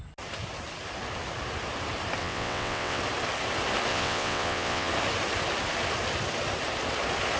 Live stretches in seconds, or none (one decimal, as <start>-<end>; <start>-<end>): 0.0-2.2; 3.0-3.9; 4.9-7.4